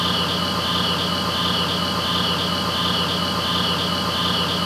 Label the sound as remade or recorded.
recorded